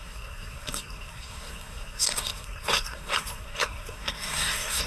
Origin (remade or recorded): remade